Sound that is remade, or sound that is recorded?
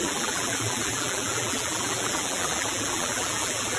remade